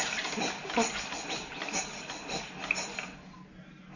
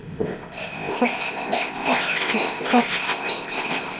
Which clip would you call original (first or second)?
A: first